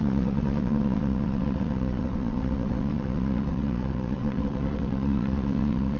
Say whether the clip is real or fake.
fake